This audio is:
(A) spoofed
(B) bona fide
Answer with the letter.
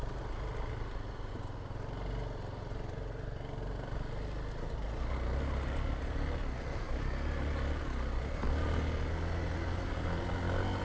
B